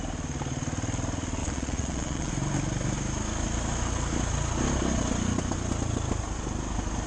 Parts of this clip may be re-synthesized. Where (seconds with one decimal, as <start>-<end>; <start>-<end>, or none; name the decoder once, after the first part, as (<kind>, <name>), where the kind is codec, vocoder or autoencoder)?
1.4-2.3 (vocoder, Vocos)